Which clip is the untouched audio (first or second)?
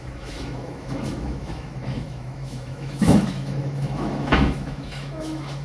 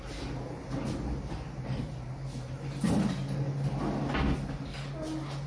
second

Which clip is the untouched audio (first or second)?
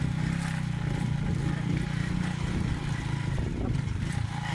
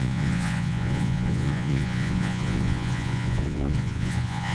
first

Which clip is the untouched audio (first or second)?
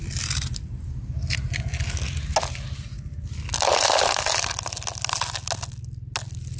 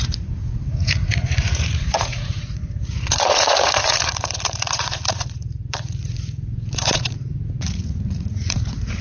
first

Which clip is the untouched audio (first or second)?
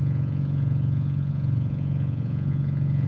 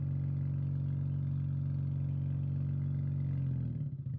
second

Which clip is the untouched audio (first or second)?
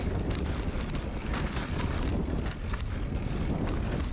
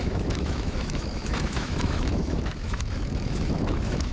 first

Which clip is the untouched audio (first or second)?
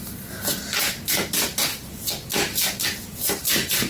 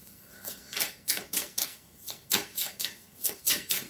first